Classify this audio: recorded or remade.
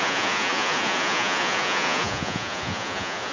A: remade